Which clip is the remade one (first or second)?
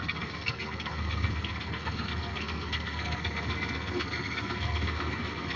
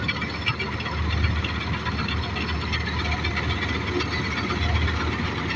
first